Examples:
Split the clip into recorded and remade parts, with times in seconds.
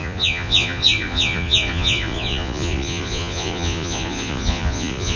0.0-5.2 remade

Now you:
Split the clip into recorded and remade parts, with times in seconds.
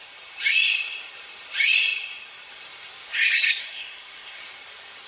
0.0-3.6 recorded; 3.6-4.4 remade; 4.4-5.1 recorded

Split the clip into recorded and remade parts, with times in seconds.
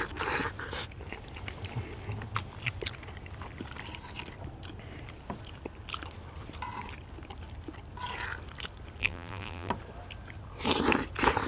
0.0-9.0 recorded; 9.0-9.7 remade; 9.7-11.5 recorded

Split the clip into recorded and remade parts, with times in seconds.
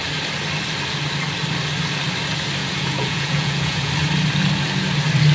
0.0-2.6 recorded; 2.6-3.9 remade; 3.9-5.3 recorded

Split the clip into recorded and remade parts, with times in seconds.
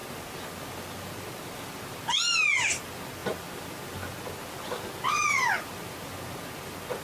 0.0-7.0 recorded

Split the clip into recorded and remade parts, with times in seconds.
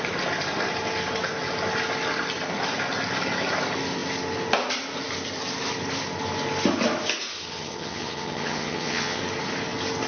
0.0-7.3 recorded; 7.3-9.2 remade; 9.2-10.1 recorded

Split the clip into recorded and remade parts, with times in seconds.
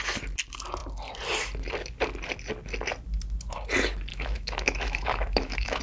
0.0-4.1 recorded; 4.1-5.8 remade